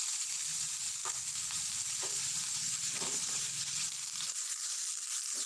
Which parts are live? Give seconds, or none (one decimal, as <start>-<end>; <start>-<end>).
0.0-1.0; 4.3-5.5